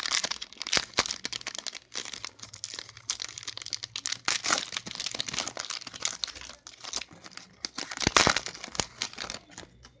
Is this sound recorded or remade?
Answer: recorded